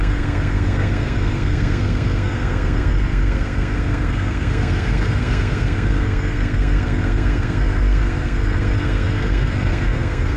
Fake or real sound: fake